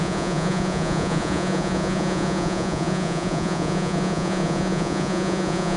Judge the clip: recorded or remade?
remade